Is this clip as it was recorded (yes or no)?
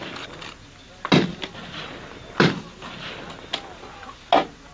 yes